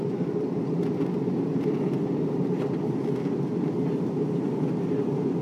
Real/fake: real